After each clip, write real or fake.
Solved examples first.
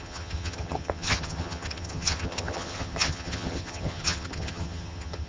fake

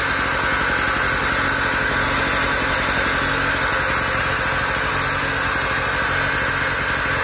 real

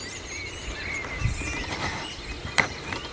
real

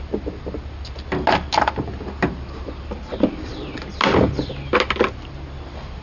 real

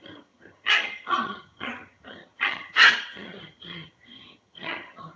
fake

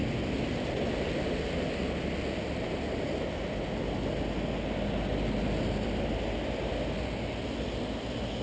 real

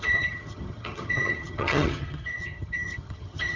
fake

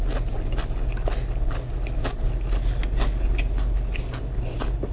real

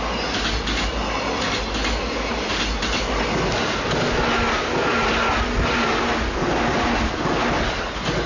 real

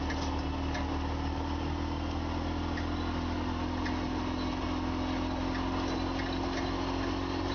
real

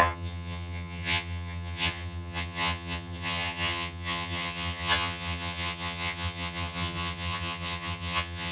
fake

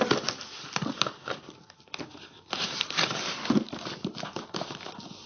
real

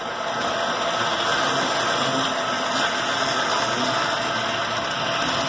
real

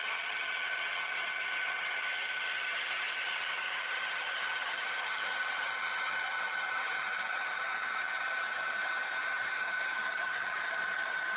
fake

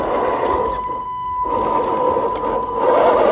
real